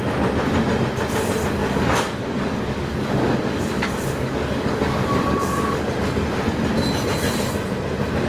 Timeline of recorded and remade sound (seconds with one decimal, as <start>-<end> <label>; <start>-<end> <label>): 0.0-1.6 recorded; 1.6-5.9 remade; 5.9-8.3 recorded